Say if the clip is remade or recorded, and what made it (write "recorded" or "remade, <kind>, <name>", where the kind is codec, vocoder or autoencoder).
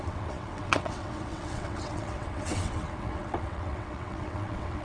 remade, vocoder, WaveNeXt